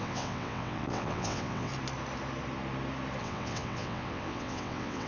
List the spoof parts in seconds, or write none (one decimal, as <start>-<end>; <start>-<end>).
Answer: 0.0-1.7; 3.2-5.1